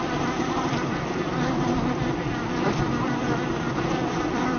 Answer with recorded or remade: remade